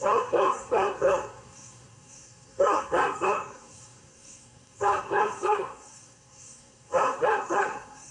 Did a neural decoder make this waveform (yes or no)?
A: yes